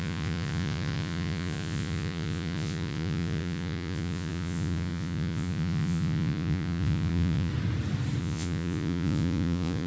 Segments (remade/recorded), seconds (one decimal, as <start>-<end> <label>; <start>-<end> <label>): 0.0-7.5 remade; 7.5-8.2 recorded; 8.2-9.9 remade